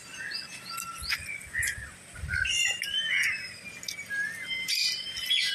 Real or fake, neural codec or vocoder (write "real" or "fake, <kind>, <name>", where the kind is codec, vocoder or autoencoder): real